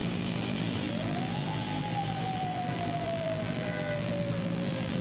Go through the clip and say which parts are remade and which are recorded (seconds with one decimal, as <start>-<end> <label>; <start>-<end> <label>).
0.0-5.0 remade